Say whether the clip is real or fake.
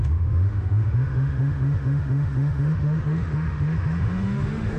fake